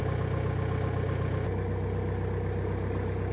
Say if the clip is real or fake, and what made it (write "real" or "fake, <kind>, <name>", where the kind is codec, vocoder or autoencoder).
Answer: real